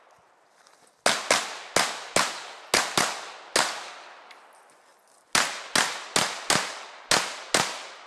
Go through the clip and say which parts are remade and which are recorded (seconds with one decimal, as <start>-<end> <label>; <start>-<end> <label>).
0.0-8.1 recorded